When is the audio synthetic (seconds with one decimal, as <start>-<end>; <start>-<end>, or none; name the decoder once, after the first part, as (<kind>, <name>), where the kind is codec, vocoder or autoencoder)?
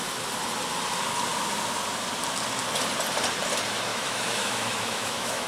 3.9-5.5 (autoencoder, DAC-VAE)